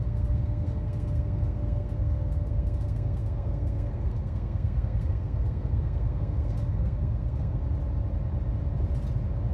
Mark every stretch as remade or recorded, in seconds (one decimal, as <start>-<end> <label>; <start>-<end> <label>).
0.0-7.6 remade; 7.6-9.5 recorded